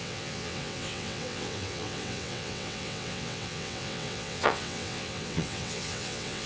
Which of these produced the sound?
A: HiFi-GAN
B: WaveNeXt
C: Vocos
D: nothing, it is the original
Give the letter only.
B